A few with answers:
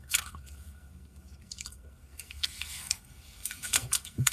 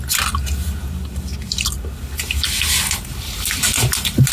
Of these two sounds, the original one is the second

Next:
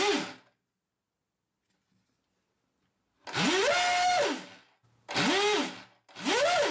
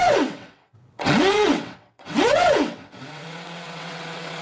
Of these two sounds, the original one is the first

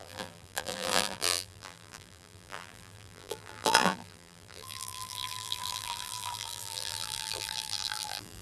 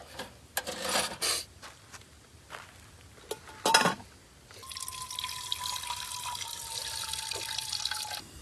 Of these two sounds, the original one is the second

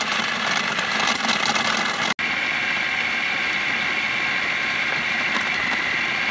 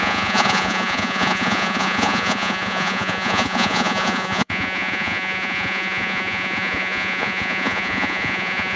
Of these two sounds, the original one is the first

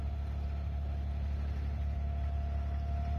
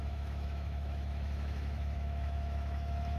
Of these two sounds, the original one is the first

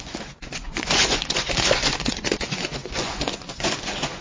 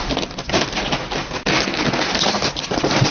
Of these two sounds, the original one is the second